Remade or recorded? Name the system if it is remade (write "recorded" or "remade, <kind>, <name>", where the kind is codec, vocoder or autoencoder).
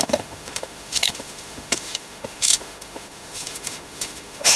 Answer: remade, autoencoder, DAC-VAE